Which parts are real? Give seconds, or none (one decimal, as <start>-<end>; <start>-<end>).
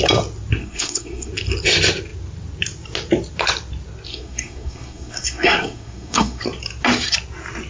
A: 0.0-0.6; 1.3-4.1; 6.4-7.7